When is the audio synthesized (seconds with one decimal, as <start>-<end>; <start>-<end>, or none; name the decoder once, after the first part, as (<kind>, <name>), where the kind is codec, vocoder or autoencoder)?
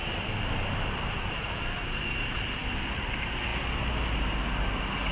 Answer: 0.0-1.5 (vocoder, BigVGAN v2); 2.6-3.1